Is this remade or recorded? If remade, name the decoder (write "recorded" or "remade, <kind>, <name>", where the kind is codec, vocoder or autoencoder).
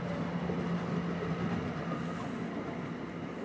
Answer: recorded